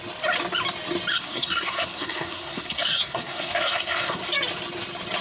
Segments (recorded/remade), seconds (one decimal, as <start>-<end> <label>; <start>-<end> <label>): 0.0-1.1 recorded; 1.1-4.2 remade; 4.2-5.2 recorded